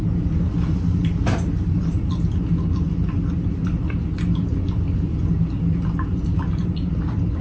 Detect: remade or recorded recorded